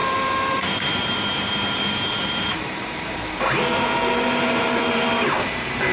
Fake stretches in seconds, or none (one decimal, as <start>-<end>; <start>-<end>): 0.0-5.9